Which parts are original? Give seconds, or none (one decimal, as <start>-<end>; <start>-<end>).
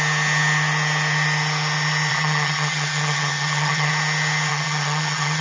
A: 0.0-2.1; 3.9-4.5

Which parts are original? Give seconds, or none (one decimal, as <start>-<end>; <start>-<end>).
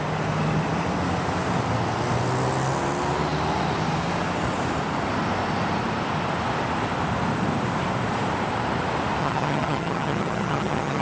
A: 0.0-9.2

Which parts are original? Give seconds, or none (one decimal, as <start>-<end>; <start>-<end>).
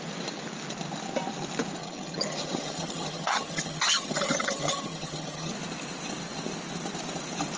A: 0.0-1.8; 5.5-7.6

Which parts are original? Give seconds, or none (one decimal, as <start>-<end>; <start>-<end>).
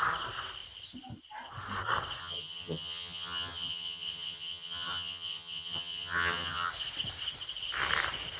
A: 0.0-2.2; 6.7-8.4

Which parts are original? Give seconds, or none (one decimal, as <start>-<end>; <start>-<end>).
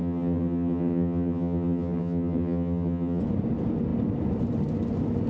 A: 3.2-5.3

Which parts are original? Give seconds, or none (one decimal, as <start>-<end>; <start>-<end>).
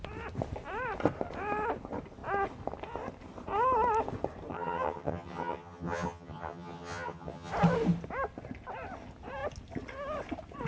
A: 0.0-4.5; 7.5-10.7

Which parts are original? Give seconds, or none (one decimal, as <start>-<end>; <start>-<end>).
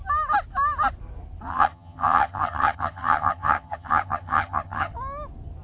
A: 0.0-1.5; 4.9-5.6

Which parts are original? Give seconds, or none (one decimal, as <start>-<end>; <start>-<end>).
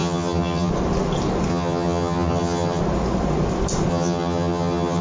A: 0.7-1.5; 2.8-3.9